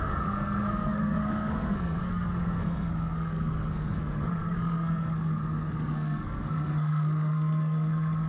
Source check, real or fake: fake